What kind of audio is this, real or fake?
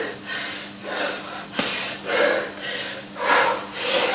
real